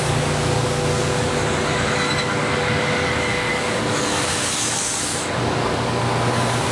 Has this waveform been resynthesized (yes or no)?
yes